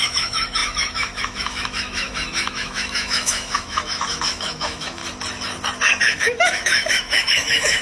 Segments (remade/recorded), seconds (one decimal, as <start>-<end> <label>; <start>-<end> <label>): 0.0-5.0 remade; 5.0-6.0 recorded; 6.0-7.8 remade